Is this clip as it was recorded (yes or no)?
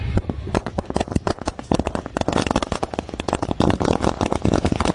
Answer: no